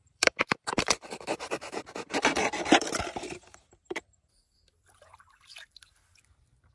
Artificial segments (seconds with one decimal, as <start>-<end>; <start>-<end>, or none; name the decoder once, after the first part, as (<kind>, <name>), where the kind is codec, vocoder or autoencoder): 0.0-4.0 (vocoder, BigVGAN v2)